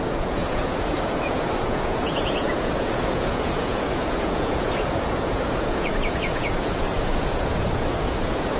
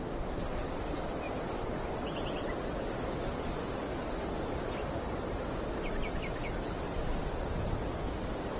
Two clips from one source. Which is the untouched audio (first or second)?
second